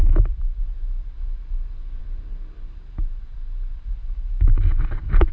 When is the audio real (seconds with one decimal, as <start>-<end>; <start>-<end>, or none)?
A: 0.6-5.3